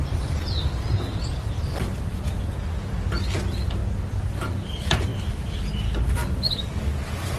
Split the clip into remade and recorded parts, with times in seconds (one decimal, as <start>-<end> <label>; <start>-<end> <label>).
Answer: 0.0-6.2 recorded; 6.2-6.9 remade; 6.9-7.4 recorded